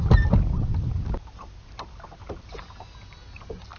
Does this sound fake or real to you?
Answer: real